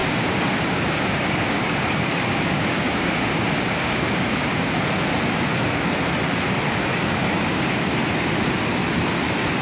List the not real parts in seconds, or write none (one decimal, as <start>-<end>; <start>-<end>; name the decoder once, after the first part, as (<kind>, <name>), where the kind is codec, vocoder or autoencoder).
0.0-4.8 (codec, DAC); 6.9-7.9